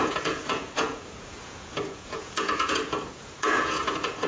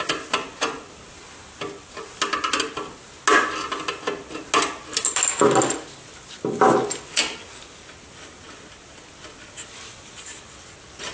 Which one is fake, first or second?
first